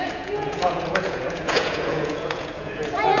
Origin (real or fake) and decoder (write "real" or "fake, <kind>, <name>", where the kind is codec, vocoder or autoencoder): fake, vocoder, Vocos